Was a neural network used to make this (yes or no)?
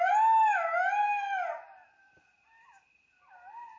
no